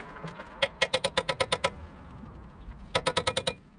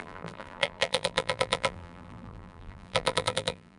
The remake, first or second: second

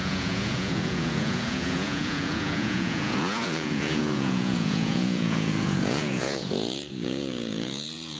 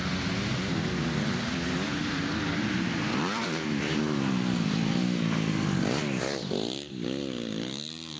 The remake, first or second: first